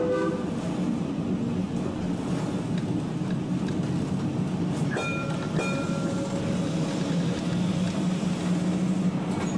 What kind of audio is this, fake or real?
real